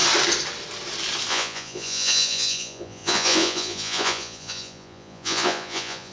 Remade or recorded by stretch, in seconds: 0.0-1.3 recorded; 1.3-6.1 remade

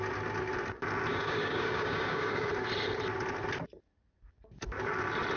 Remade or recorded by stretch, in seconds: 0.0-1.1 recorded; 1.1-2.5 remade; 2.5-5.4 recorded

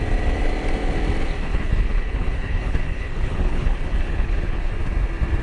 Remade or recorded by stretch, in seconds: 0.0-1.5 recorded; 1.5-4.7 remade; 4.7-5.4 recorded